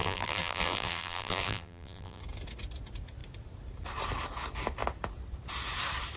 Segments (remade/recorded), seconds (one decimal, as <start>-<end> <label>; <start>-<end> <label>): 0.0-2.2 remade; 2.2-6.2 recorded